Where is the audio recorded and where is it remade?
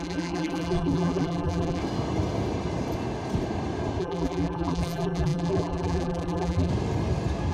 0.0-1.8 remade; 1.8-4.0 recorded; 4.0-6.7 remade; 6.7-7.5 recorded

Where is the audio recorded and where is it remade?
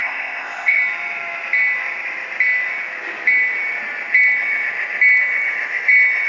0.0-0.8 remade; 0.8-6.3 recorded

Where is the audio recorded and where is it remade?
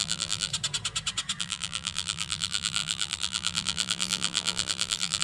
0.0-0.5 remade; 0.5-1.4 recorded; 1.4-5.2 remade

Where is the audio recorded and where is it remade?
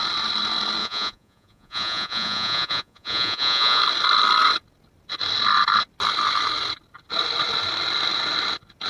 0.0-0.8 recorded; 0.8-3.8 remade; 3.8-8.9 recorded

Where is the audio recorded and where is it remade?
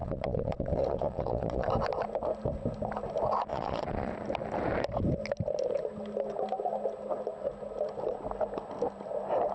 0.0-1.7 remade; 1.7-3.5 recorded; 3.5-4.1 remade; 4.1-9.5 recorded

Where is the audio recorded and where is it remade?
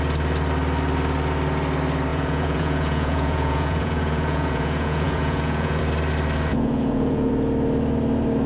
0.0-2.1 recorded; 2.1-5.8 remade; 5.8-6.5 recorded; 6.5-7.3 remade; 7.3-8.5 recorded